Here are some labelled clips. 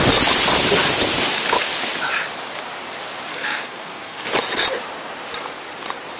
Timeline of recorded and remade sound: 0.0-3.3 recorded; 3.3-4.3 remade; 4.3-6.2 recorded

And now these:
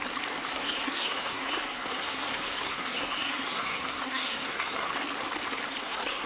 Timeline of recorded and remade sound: 0.0-0.5 recorded; 0.5-4.9 remade; 4.9-5.8 recorded; 5.8-6.3 remade

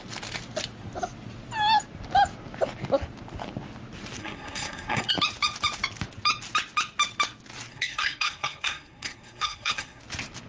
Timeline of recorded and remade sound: 0.0-4.2 recorded; 4.2-5.1 remade; 5.1-7.7 recorded; 7.7-10.0 remade; 10.0-10.5 recorded

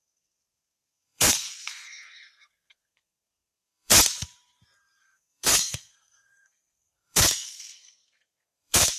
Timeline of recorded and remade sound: 0.0-3.9 remade; 3.9-5.0 recorded; 5.0-9.0 remade